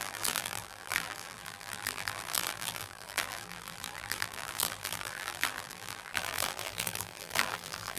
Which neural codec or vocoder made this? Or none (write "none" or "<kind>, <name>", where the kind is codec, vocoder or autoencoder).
vocoder, BigVGAN v2